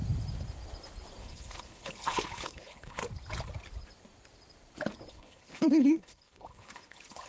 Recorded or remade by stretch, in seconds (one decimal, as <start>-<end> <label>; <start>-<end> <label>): 0.0-1.2 recorded; 1.2-3.0 remade; 3.0-5.1 recorded; 5.1-7.3 remade